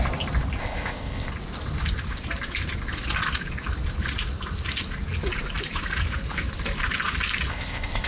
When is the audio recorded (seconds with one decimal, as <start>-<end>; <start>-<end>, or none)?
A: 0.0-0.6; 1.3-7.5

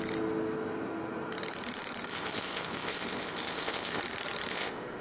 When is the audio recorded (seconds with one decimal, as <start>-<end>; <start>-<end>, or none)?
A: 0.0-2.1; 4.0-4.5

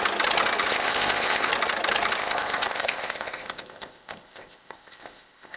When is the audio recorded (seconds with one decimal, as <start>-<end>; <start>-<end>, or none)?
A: 0.0-0.7; 1.5-2.2

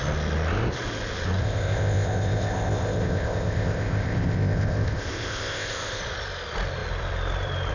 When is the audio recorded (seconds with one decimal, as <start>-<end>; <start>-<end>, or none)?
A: 0.0-1.4; 6.0-7.7